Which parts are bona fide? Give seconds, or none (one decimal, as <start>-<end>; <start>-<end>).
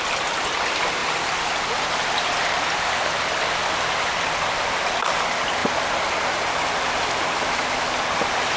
0.0-8.6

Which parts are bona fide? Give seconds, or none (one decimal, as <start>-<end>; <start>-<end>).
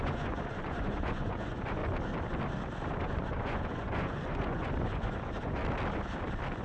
1.8-3.0; 5.6-6.6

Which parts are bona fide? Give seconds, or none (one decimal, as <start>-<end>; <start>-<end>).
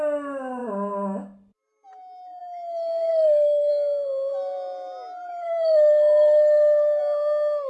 0.0-3.1; 3.7-5.4; 7.0-7.7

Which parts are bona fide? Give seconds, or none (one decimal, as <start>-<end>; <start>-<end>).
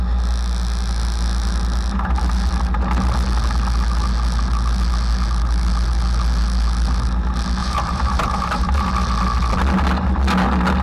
0.0-7.6; 8.9-10.8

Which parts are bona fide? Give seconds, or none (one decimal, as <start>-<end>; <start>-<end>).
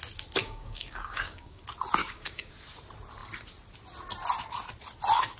0.0-0.4; 1.6-2.0; 2.5-5.4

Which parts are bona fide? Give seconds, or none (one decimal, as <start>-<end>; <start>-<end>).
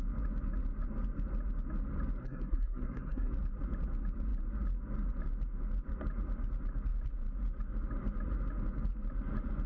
0.0-2.2; 3.3-9.7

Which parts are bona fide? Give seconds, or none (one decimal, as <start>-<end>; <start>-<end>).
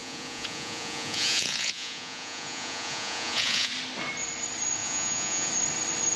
3.7-4.8; 5.5-6.2